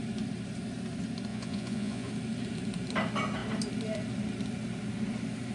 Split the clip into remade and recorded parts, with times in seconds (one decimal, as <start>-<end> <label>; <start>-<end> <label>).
0.0-1.3 recorded; 1.3-2.1 remade; 2.1-5.5 recorded